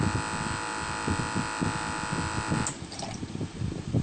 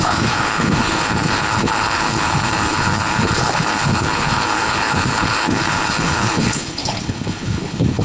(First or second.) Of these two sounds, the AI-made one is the second